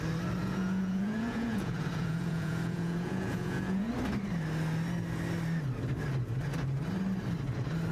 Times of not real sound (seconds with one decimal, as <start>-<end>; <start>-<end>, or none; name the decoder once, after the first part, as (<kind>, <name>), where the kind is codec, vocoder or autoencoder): 0.4-3.9 (vocoder, Vocos)